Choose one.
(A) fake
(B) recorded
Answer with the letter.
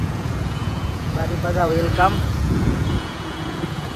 A